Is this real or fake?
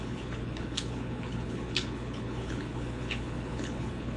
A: fake